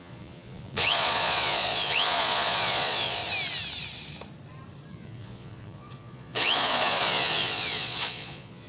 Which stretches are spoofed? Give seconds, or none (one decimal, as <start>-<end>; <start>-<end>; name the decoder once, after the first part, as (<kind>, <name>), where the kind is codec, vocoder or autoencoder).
0.0-3.2 (vocoder, Vocos); 4.9-8.7

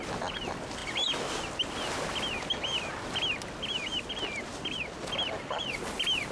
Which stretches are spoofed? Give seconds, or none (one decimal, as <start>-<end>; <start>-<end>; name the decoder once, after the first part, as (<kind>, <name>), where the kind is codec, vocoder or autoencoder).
none

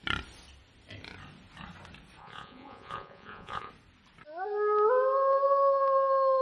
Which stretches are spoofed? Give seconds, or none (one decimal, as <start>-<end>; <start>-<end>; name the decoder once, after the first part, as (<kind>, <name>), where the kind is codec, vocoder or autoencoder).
2.2-3.7 (vocoder, Vocos)

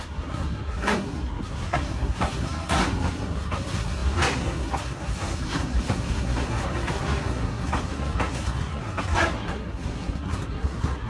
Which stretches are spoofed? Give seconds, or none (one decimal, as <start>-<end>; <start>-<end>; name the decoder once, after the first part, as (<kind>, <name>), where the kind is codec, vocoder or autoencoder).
0.0-11.1 (codec, SNAC)

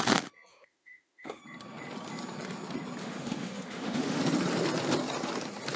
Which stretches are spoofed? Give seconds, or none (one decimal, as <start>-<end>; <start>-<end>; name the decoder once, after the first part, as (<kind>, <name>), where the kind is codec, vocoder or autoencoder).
0.5-1.4 (autoencoder, DAC-VAE); 3.0-4.2

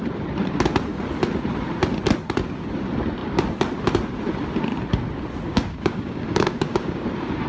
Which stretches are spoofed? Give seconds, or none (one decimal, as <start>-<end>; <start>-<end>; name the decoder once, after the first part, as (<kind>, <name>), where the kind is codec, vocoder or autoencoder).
5.5-7.0 (codec, DAC)

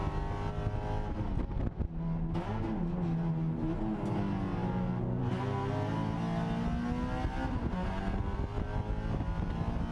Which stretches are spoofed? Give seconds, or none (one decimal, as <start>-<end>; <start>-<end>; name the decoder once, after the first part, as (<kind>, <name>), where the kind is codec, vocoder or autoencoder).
none